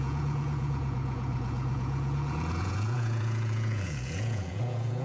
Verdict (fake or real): fake